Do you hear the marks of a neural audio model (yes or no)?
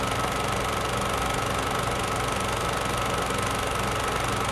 no